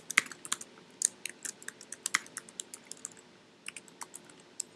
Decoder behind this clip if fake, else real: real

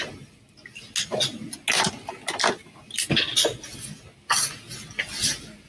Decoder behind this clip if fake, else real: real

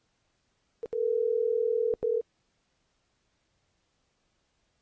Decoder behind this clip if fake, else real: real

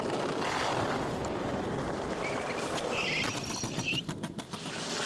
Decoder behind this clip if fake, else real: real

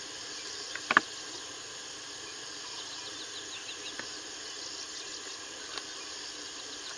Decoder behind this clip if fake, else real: real